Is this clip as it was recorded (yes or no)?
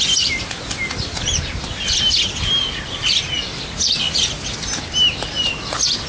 yes